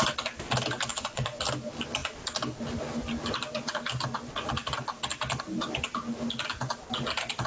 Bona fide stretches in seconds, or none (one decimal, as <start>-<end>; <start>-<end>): 0.0-0.9; 1.4-7.5